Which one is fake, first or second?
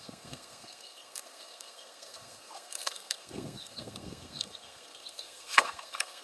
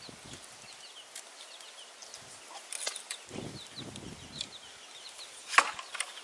first